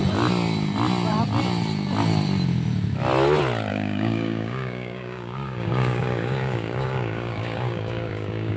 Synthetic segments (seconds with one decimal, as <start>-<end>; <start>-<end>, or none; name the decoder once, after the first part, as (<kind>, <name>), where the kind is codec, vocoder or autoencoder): 3.7-8.6 (codec, DAC)